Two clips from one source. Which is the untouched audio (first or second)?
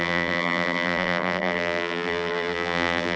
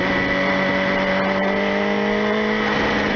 second